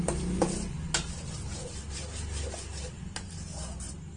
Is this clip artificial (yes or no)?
no